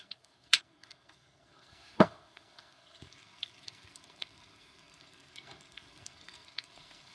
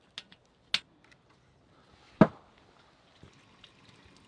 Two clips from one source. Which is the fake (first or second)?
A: first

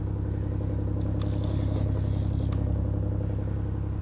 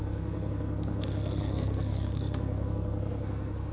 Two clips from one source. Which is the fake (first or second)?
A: second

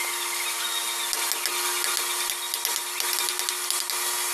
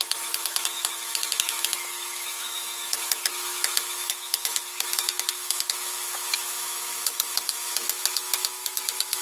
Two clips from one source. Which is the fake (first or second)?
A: second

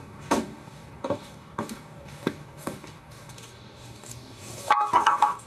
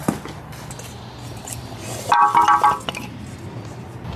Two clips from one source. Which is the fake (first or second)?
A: first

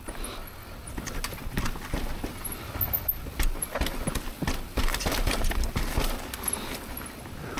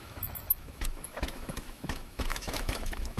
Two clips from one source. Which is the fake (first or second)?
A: second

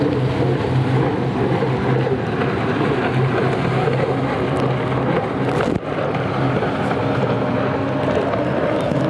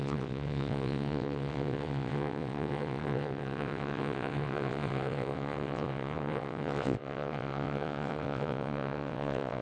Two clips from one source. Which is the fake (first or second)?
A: second